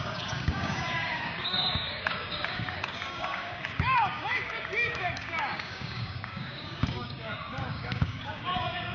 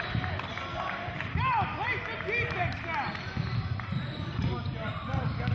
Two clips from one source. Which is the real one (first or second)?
second